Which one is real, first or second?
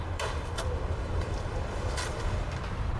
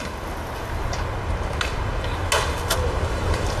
second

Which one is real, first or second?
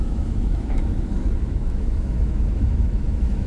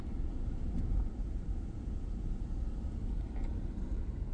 second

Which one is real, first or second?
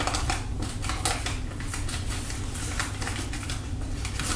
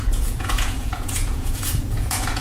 first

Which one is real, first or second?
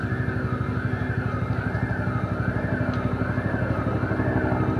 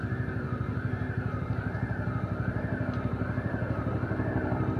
first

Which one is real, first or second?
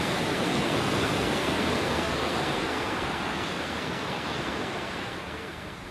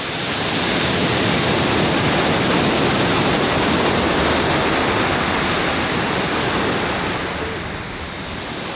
second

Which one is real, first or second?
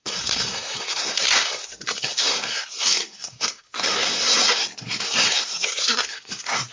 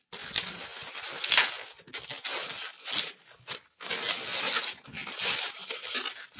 second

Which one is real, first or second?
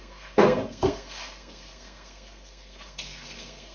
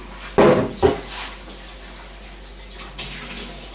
second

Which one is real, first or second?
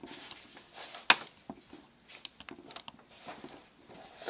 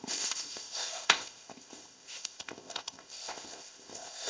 first